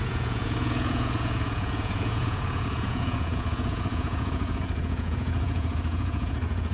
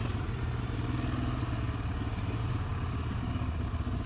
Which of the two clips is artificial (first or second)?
first